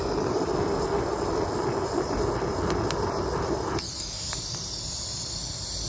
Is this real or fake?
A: real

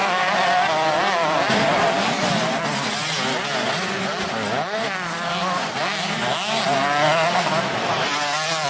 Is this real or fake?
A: real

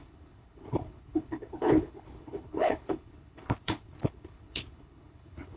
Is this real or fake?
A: fake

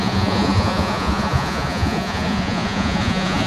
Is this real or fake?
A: fake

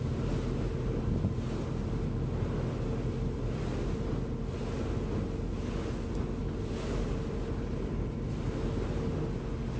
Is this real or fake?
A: real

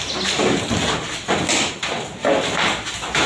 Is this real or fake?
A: real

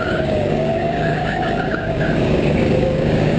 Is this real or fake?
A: fake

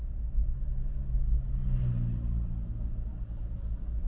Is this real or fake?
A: real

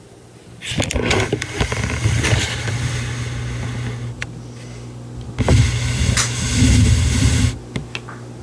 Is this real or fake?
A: real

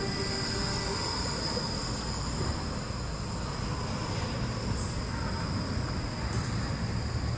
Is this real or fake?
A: real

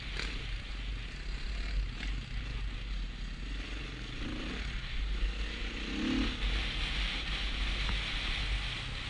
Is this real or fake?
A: real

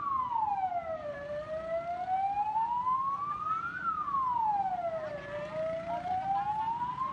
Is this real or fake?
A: real